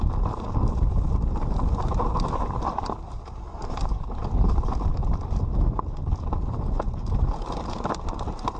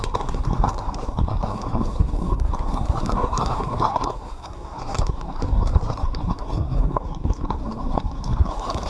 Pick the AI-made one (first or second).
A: second